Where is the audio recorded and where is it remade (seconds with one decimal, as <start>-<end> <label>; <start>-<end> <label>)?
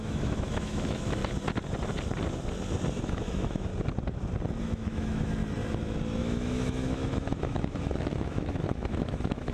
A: 0.0-1.2 remade; 1.2-3.0 recorded; 3.0-3.7 remade; 3.7-4.6 recorded; 4.6-5.4 remade; 5.4-6.2 recorded; 6.2-9.5 remade